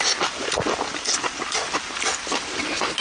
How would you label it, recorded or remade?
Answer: recorded